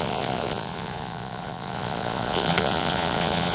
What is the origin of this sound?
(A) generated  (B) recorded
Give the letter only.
A